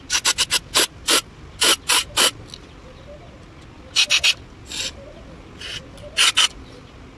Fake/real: real